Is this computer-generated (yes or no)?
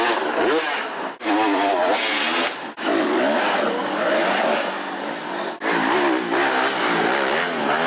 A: no